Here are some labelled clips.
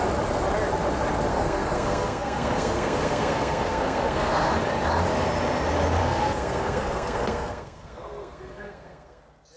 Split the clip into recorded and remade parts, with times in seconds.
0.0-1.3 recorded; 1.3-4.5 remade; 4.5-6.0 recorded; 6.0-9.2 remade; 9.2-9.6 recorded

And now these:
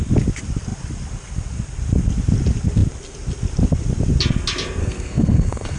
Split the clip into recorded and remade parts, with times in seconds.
0.0-4.8 recorded; 4.8-5.8 remade

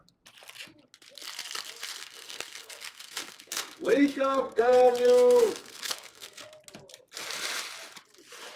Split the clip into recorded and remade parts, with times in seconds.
0.0-2.0 recorded; 2.0-6.6 remade; 6.6-8.6 recorded

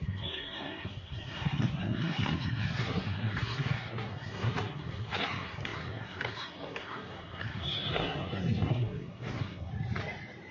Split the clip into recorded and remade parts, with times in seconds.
0.0-9.7 remade; 9.7-10.5 recorded